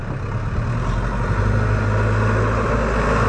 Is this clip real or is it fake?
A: real